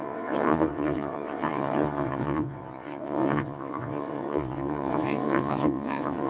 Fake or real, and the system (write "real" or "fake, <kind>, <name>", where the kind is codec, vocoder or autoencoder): fake, vocoder, WaveNeXt